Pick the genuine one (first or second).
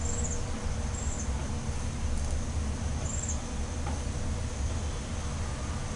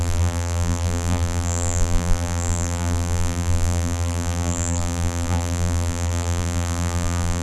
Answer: first